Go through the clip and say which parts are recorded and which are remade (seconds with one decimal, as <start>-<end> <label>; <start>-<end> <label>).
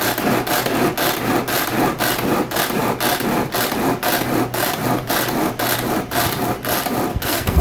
0.0-7.1 recorded; 7.1-7.6 remade